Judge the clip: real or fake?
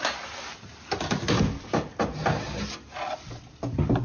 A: real